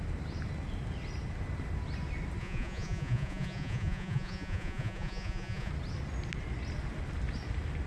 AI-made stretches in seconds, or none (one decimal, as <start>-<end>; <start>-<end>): 2.4-5.7